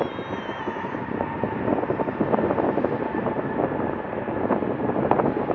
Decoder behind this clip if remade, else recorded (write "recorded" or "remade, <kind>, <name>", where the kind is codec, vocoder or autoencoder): recorded